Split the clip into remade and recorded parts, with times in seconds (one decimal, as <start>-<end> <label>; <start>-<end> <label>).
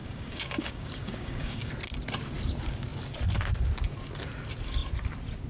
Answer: 0.0-1.7 remade; 1.7-5.5 recorded